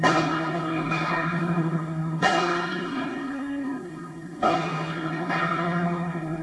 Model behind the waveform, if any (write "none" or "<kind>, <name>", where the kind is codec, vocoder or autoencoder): codec, SNAC